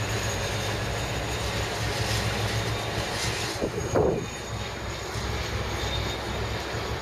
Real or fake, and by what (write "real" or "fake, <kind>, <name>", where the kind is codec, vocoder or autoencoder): real